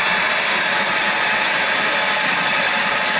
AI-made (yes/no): no